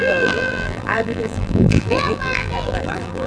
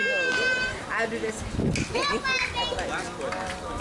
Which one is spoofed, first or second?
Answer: first